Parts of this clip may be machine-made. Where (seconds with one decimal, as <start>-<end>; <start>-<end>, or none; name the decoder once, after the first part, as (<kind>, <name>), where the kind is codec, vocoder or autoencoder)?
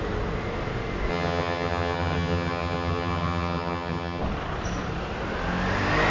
1.1-4.2 (vocoder, HiFi-GAN)